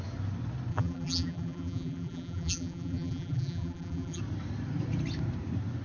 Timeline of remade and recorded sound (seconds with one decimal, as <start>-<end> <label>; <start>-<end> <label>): 0.0-0.7 recorded; 0.7-4.2 remade; 4.2-5.8 recorded